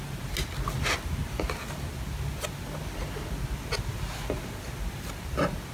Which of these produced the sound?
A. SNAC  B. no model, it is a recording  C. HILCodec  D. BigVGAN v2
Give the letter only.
B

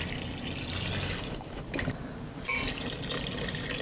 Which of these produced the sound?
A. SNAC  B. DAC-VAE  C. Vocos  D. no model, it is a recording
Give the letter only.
D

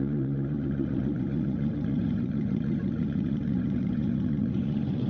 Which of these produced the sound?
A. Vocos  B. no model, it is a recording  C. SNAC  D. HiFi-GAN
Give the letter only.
A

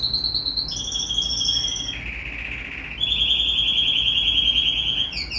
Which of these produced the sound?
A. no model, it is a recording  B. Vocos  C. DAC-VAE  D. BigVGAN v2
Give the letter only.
A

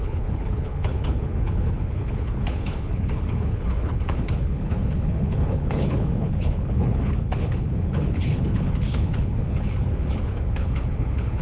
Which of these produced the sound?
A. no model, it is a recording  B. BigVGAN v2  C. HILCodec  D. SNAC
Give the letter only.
C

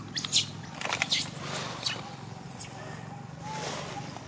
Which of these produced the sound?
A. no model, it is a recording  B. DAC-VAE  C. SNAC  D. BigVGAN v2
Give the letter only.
A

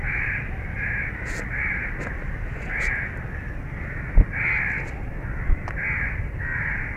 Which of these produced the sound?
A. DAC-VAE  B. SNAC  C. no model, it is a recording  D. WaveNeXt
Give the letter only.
C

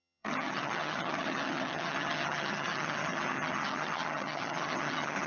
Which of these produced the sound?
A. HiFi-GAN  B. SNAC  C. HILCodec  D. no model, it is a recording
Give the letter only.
A